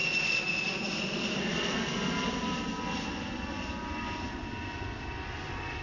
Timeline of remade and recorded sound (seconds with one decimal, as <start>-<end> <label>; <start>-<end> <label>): 0.0-5.8 recorded